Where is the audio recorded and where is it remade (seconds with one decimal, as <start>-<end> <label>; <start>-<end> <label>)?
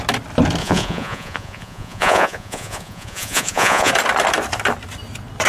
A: 0.0-0.6 recorded; 0.6-3.9 remade; 3.9-5.5 recorded